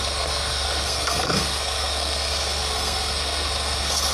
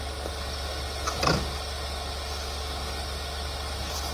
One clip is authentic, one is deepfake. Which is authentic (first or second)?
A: second